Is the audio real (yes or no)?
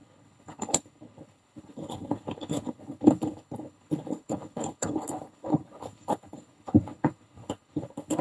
no